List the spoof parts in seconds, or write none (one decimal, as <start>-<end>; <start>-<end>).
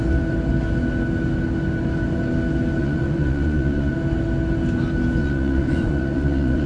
2.8-3.9; 5.2-6.7